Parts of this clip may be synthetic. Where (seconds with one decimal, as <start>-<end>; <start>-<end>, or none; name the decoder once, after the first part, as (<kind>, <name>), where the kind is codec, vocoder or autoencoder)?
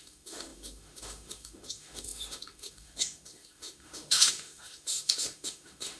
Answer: 0.0-6.0 (autoencoder, DAC-VAE)